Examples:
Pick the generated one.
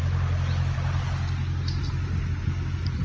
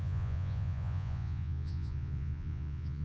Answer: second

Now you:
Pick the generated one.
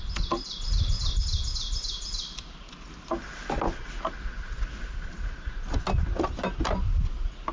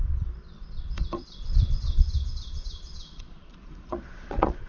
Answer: second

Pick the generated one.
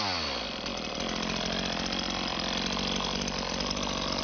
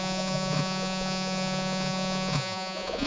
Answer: second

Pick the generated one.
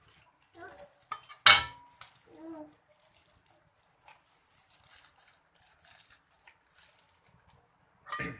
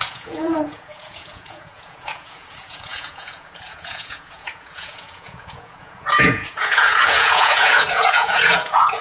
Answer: second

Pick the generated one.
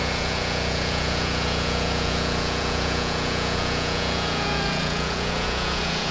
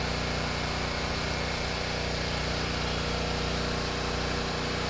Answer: first